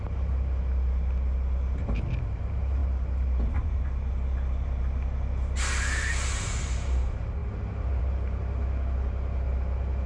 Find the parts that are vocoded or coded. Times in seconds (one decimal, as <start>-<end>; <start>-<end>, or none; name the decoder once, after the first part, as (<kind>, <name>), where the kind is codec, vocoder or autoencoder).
none